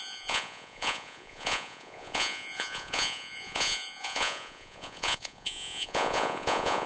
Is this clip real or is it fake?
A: fake